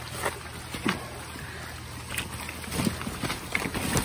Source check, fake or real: real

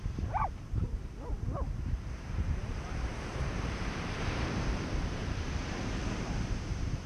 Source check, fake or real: fake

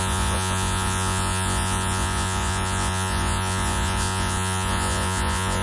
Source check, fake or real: fake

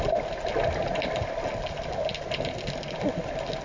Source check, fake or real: real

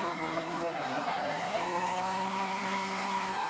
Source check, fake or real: fake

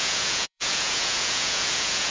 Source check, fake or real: fake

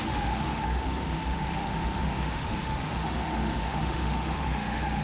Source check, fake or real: fake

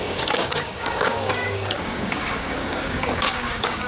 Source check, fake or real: fake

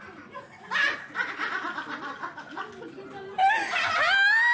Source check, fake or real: real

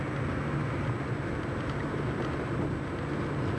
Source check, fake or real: real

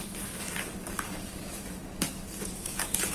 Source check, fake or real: fake